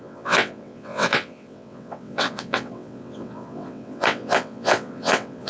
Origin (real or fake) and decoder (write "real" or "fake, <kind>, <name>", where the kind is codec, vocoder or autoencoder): fake, vocoder, WaveNeXt